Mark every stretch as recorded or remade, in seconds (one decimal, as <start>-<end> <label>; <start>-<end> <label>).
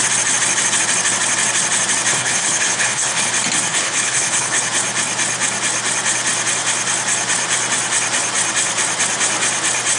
0.0-2.1 recorded; 2.1-3.3 remade; 3.3-3.7 recorded; 3.7-4.6 remade; 4.6-10.0 recorded